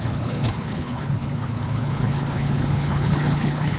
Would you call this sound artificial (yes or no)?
yes